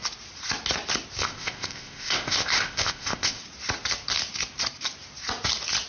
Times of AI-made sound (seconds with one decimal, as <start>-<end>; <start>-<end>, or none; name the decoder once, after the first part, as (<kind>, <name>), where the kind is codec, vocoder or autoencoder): 1.2-3.4 (codec, ZipCodec)